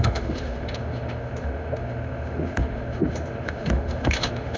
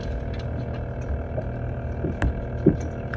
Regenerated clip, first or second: first